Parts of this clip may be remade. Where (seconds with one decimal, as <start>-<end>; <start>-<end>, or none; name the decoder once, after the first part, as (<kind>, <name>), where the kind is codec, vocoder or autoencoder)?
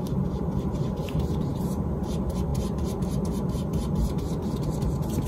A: 1.5-2.0 (vocoder, BigVGAN v2)